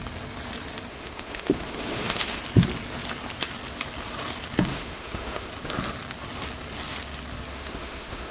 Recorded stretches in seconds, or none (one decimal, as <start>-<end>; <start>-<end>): 0.0-0.9; 2.4-4.7; 5.5-7.5